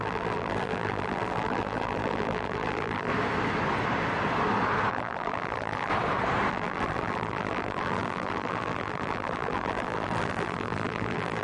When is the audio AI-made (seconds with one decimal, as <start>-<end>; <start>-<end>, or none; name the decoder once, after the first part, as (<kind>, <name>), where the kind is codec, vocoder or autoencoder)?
0.0-3.1 (vocoder, BigVGAN v2); 4.9-5.9; 6.5-11.4

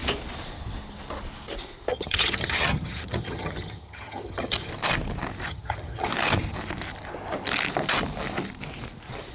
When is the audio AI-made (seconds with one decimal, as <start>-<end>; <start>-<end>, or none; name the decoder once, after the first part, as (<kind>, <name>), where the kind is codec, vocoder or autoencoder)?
1.9-4.7 (vocoder, HiFi-GAN); 5.5-6.1

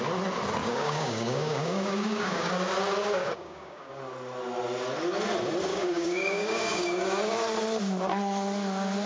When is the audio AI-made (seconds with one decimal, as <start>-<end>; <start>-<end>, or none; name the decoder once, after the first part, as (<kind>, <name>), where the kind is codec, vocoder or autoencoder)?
0.6-2.5 (codec, DAC); 3.2-3.9; 5.7-7.2

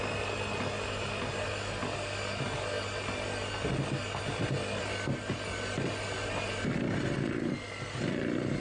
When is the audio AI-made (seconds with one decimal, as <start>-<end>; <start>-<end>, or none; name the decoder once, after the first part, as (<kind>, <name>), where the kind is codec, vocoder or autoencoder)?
none